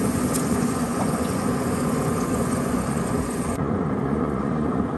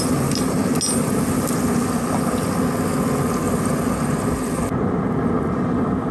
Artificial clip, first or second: first